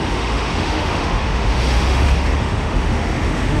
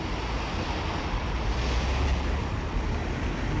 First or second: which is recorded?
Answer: second